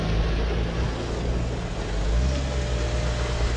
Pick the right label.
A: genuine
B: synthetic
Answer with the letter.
A